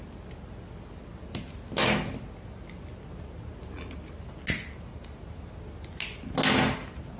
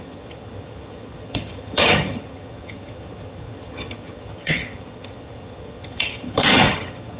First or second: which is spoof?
second